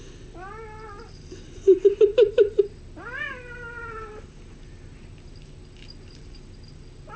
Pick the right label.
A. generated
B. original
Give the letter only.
B